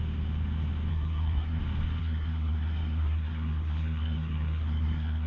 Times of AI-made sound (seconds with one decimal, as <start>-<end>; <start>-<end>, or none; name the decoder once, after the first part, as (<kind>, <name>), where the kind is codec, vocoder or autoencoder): 0.9-1.6 (codec, SNAC); 2.0-5.3